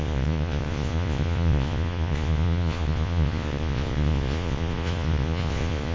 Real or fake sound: fake